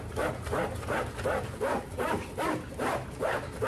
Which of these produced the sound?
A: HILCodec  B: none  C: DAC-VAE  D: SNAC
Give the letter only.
B